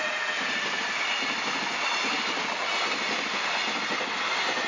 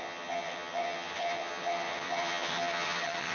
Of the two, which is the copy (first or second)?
second